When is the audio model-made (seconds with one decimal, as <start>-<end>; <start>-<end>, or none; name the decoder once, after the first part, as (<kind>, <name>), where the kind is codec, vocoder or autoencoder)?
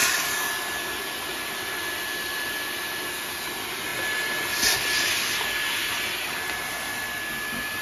none